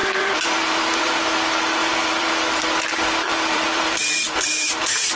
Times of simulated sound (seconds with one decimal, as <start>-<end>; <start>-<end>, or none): 0.0-1.2; 1.8-5.2